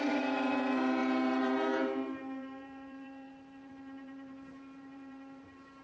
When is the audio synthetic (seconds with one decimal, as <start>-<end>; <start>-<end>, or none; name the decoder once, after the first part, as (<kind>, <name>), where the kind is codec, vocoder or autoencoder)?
0.0-5.8 (vocoder, BigVGAN v2)